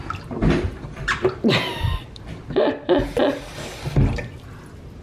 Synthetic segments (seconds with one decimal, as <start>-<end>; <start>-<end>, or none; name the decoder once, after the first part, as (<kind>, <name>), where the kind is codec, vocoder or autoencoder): none